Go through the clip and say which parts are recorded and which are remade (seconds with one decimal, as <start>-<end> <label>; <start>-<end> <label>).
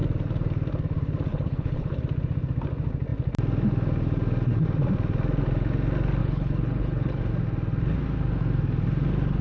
0.0-1.3 recorded; 1.3-2.0 remade; 2.0-6.2 recorded; 6.2-7.2 remade; 7.2-9.4 recorded